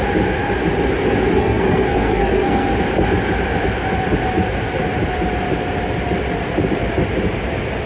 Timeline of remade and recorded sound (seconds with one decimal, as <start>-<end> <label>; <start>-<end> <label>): 0.0-1.4 recorded; 1.4-2.7 remade; 2.7-7.9 recorded